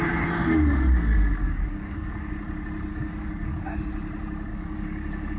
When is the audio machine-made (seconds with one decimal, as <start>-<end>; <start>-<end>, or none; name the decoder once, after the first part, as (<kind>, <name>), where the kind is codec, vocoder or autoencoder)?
0.4-2.3 (codec, DAC); 2.9-3.8; 4.5-5.4